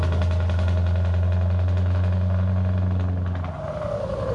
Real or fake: real